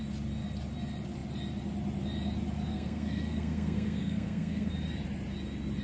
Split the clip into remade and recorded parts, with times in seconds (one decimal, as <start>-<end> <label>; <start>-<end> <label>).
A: 0.0-2.7 recorded; 2.7-4.7 remade; 4.7-5.8 recorded